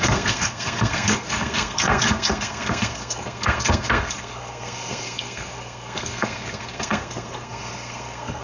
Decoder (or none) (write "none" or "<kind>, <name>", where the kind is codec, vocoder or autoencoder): codec, SNAC